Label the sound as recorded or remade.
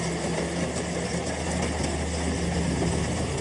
recorded